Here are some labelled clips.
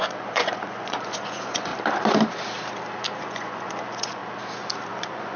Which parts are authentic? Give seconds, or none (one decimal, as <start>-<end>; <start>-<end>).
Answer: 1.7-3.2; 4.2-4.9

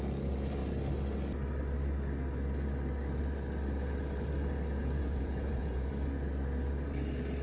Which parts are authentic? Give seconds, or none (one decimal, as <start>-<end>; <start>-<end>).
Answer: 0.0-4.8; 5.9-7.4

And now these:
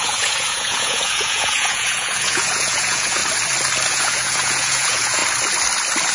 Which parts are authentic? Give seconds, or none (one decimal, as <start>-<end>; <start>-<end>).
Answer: 3.2-3.9; 5.2-6.1